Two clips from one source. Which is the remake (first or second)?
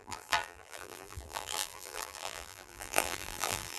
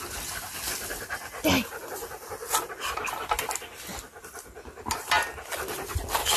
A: first